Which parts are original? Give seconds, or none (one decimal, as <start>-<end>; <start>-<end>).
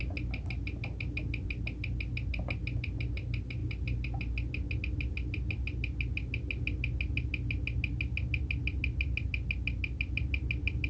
0.0-10.9